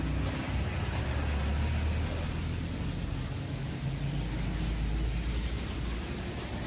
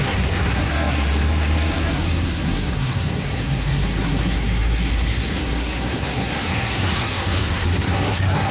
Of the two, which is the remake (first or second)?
second